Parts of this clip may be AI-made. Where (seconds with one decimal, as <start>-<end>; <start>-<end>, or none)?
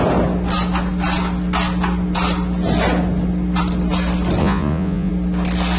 4.4-5.1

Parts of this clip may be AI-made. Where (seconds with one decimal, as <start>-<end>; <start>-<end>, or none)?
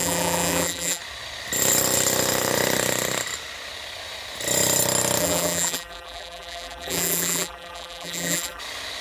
0.0-1.0; 5.2-8.6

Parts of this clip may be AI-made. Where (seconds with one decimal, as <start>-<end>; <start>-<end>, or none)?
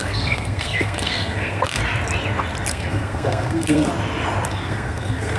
0.0-1.8; 2.7-3.9; 4.5-5.4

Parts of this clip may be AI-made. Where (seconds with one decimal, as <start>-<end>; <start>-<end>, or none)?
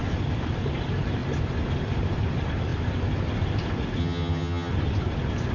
4.0-4.7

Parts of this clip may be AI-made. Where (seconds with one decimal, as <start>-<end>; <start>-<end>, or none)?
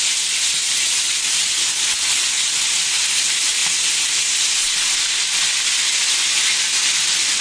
none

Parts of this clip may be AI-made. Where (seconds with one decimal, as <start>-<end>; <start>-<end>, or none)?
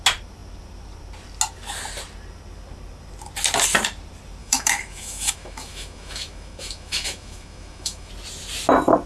4.4-8.1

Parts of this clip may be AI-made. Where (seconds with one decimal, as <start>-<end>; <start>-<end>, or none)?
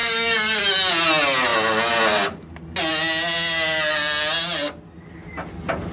0.0-0.6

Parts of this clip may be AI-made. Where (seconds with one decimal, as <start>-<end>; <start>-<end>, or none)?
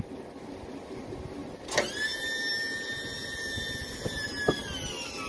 3.0-5.3